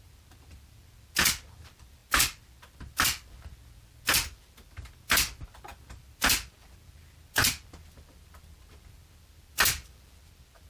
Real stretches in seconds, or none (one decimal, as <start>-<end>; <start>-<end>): 0.0-10.7